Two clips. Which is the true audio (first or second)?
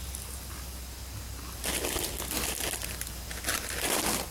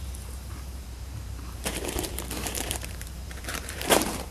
first